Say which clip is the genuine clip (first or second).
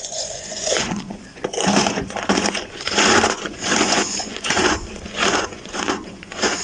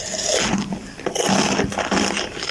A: second